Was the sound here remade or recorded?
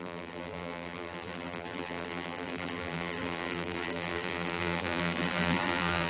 remade